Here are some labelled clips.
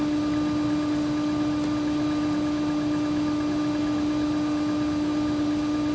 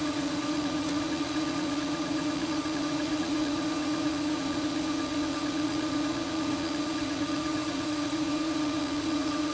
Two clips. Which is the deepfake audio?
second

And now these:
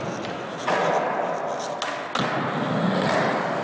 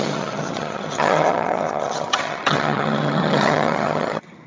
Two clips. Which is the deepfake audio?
second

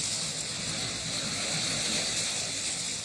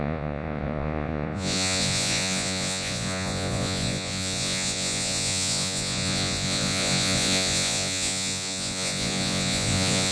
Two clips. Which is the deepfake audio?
second